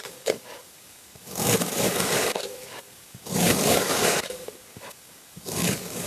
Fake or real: fake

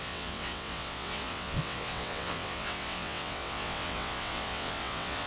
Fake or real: fake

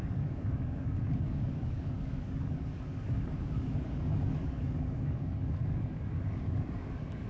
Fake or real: fake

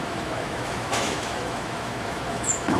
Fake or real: fake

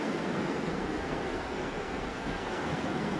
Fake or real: fake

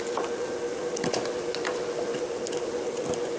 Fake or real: real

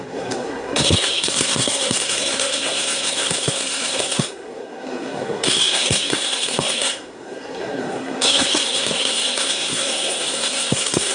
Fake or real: fake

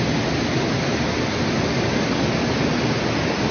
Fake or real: real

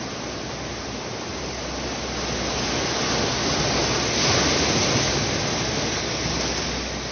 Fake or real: real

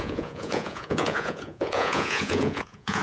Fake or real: fake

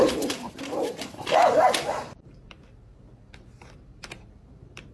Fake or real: fake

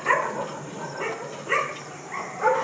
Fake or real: real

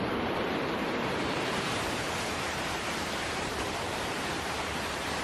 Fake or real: fake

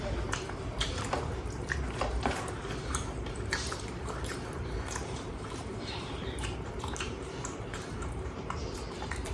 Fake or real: fake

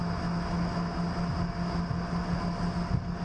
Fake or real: real